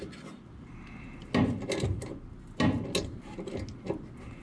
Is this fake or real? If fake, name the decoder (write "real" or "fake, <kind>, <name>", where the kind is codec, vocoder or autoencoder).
real